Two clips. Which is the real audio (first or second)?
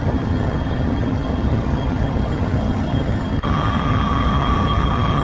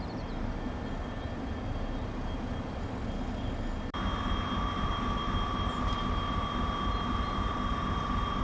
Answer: second